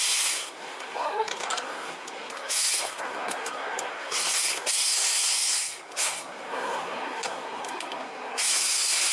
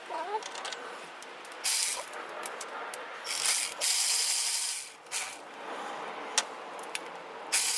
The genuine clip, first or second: second